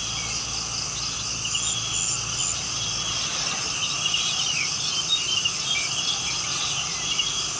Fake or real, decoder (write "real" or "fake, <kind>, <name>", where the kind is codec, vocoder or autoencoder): real